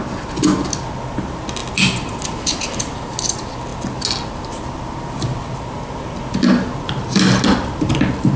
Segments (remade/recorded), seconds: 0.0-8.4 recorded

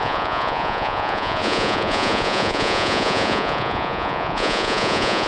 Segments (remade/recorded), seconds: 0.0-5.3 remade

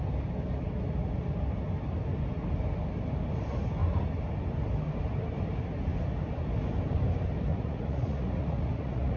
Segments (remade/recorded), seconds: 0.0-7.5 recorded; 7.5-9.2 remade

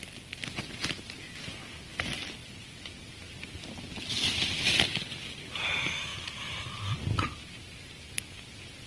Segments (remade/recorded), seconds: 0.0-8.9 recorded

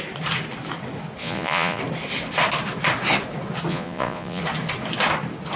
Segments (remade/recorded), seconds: 0.0-1.2 recorded; 1.2-1.8 remade; 1.8-3.7 recorded; 3.7-4.4 remade; 4.4-5.6 recorded

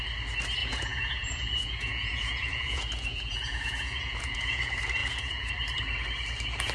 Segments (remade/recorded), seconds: 0.0-0.6 recorded; 0.6-4.6 remade; 4.6-5.0 recorded; 5.0-5.5 remade; 5.5-6.7 recorded